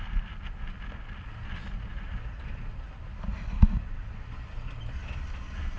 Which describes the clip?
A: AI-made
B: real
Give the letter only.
B